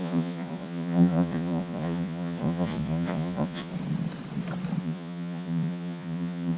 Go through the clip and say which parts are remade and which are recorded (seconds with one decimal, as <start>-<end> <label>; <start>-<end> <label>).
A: 0.0-3.7 remade; 3.7-4.8 recorded; 4.8-6.6 remade